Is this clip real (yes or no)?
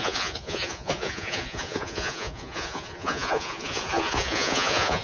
no